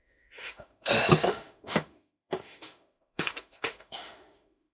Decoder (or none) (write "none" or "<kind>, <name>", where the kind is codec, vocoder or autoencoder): autoencoder, DAC-VAE